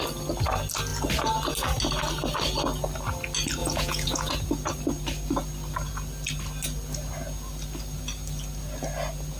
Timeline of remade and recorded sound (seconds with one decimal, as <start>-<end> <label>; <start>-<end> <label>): 0.0-3.6 recorded; 3.6-4.3 remade; 4.3-9.4 recorded